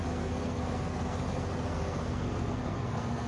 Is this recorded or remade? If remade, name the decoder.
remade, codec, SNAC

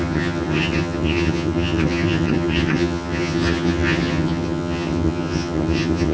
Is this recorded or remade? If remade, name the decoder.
remade, vocoder, HiFi-GAN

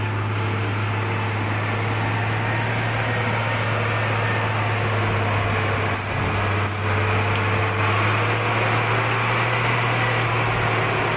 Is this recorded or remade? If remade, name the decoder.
recorded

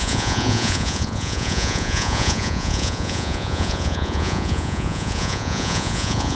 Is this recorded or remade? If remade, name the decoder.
remade, vocoder, Vocos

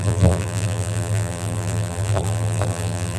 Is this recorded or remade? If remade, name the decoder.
remade, vocoder, BigVGAN v2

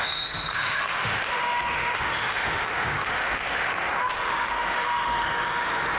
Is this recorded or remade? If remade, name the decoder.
remade, autoencoder, DAC-VAE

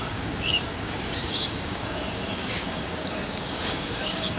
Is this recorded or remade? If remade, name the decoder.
remade, codec, DAC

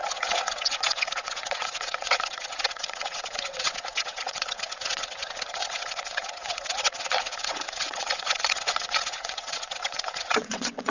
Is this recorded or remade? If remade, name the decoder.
remade, vocoder, WaveNeXt